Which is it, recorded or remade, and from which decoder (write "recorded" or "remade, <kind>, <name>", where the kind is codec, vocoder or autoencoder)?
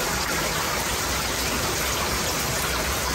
recorded